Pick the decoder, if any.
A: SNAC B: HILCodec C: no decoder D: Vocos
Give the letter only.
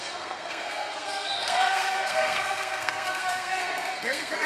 A